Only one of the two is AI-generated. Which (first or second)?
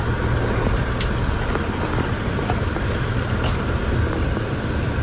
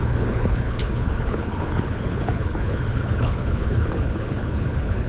second